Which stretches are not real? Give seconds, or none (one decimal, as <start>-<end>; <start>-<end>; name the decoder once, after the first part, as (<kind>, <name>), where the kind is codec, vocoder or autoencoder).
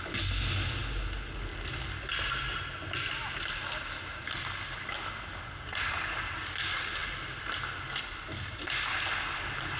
none